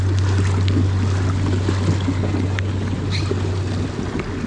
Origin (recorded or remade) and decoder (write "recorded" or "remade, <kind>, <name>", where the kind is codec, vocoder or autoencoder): recorded